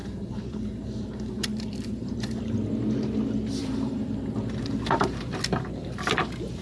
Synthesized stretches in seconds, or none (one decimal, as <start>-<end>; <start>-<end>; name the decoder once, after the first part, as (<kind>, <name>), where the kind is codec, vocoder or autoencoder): 0.0-2.4 (vocoder, BigVGAN v2); 3.6-5.2